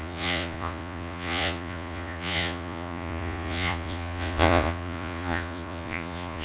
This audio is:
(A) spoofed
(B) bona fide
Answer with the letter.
A